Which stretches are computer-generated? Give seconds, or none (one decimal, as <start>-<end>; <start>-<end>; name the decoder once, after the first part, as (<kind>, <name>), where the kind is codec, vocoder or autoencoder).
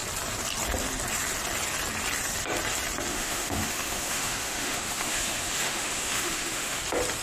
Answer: 3.1-6.8 (autoencoder, DAC-VAE)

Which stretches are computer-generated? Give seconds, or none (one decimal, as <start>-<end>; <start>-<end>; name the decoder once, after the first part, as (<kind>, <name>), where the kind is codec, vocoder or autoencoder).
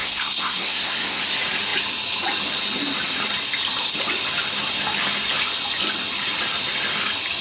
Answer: 0.0-1.2 (codec, SNAC)